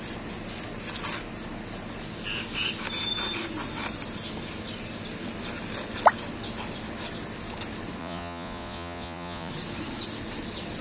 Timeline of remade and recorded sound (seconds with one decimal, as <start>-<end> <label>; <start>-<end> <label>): 0.0-8.0 recorded; 8.0-9.5 remade; 9.5-10.8 recorded

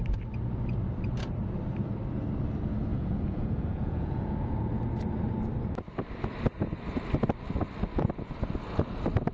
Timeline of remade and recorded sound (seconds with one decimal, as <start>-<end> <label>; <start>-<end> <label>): 0.0-2.9 recorded; 2.9-4.6 remade; 4.6-9.3 recorded

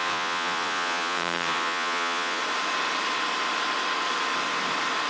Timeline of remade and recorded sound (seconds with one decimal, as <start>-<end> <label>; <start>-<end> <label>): 0.0-2.4 remade; 2.4-5.1 recorded

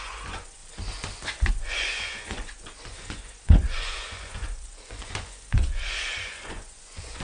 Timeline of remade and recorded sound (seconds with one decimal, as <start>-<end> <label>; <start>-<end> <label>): 0.0-0.6 remade; 0.6-1.5 recorded; 1.5-7.2 remade

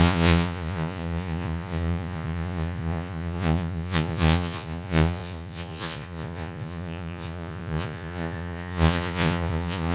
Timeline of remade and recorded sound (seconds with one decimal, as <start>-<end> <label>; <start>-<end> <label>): 0.0-9.9 remade

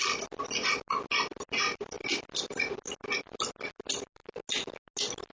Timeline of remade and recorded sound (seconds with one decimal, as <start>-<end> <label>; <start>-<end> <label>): 0.0-5.3 recorded